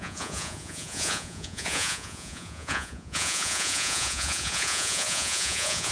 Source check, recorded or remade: remade